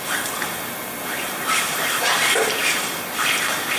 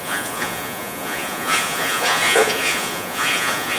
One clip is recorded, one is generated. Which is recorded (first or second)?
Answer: first